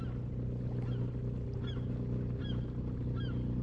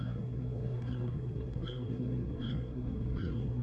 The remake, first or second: second